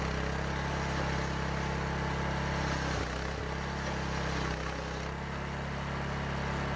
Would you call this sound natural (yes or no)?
yes